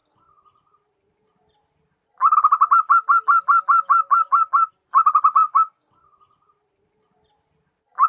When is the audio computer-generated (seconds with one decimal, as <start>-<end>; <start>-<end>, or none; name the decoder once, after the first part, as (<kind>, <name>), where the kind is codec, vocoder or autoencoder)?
5.4-5.9 (codec, DAC)